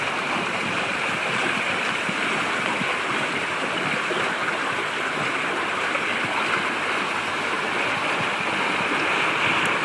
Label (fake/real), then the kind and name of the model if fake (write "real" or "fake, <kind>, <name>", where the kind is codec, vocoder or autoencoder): real